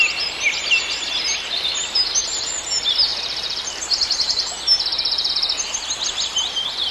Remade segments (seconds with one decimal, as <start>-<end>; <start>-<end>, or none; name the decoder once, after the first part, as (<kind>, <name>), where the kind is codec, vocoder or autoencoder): none